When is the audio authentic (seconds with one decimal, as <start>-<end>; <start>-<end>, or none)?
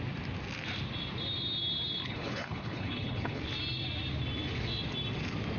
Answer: 0.0-2.0; 3.4-5.6